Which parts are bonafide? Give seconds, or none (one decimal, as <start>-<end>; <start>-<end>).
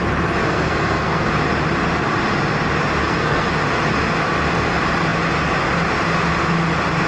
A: 0.0-0.4; 1.3-3.0; 3.5-7.1